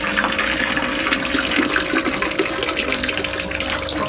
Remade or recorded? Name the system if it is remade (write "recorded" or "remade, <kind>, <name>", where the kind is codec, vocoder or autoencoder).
recorded